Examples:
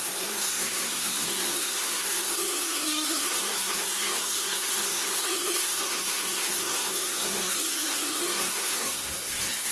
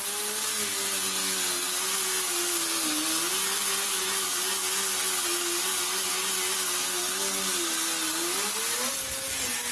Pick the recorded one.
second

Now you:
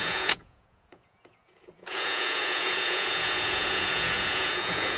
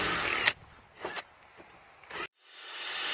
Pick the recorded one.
second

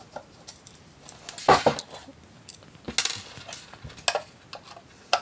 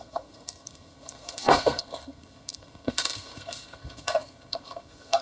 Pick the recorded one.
first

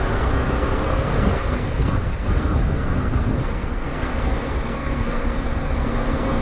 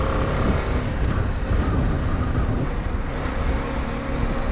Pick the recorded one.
second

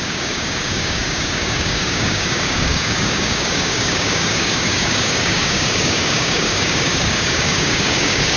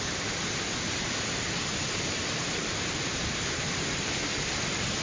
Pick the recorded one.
second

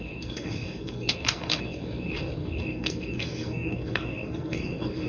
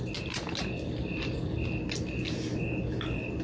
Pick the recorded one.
second